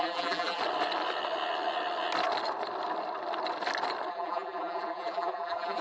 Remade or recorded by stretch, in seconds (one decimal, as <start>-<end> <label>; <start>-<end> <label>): 0.0-0.6 remade; 0.6-4.1 recorded; 4.1-5.8 remade